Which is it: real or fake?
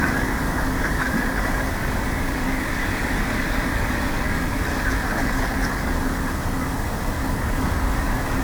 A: fake